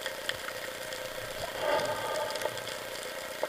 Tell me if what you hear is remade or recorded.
recorded